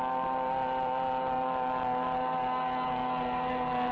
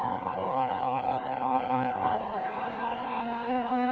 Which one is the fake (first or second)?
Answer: second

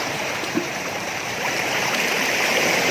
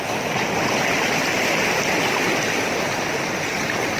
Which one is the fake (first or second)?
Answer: first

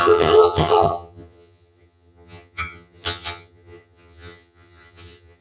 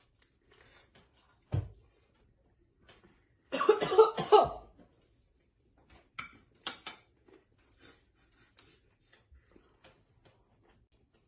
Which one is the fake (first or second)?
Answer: first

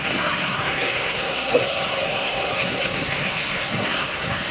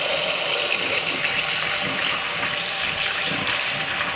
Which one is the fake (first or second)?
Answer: first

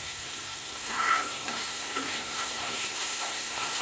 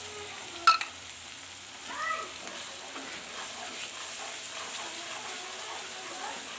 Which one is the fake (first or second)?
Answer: first